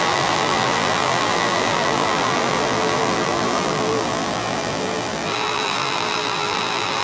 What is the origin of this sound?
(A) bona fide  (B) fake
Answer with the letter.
B